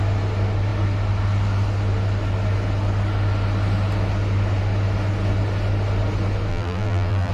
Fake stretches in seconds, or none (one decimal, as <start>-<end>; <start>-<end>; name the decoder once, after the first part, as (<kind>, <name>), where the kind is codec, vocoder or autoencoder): 6.5-7.3 (vocoder, BigVGAN v2)